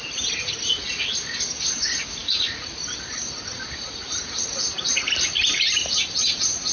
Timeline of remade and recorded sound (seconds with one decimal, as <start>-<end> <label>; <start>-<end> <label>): 0.0-6.7 recorded